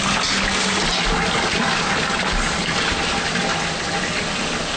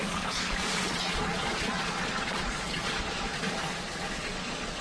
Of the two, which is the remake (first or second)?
second